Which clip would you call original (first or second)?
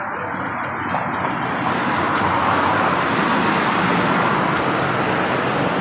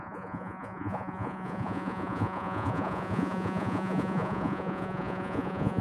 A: first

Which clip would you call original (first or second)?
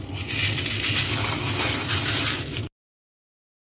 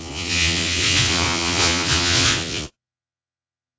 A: first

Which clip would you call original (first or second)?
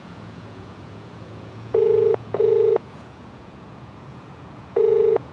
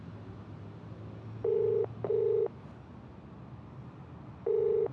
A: second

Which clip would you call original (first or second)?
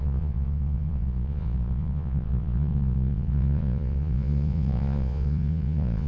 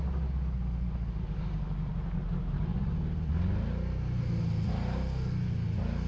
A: second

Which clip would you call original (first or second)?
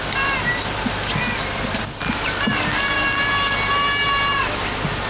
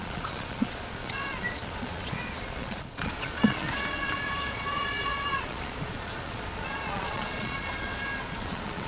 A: first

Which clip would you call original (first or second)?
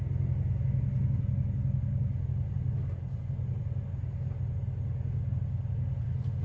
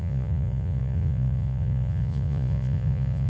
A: first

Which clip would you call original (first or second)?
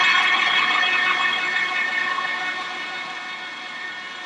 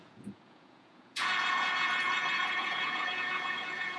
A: first